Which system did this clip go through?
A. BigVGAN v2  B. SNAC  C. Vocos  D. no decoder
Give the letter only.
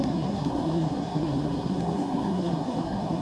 B